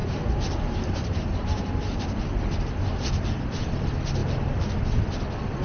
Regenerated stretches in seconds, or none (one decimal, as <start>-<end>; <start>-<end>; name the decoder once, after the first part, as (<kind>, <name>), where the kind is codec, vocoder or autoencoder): 0.0-3.4 (vocoder, BigVGAN v2); 4.2-4.8